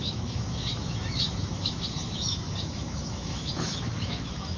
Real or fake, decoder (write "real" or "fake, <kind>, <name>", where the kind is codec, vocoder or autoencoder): fake, autoencoder, DAC-VAE